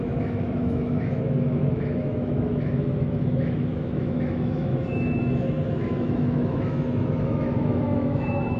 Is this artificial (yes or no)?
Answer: yes